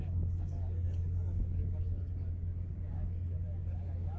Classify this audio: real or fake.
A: fake